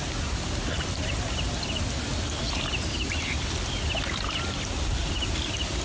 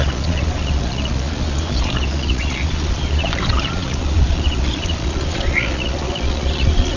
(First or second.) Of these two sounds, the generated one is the second